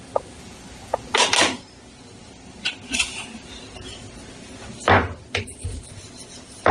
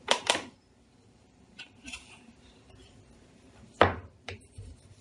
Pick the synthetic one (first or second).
second